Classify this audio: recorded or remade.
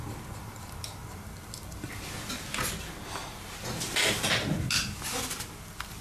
recorded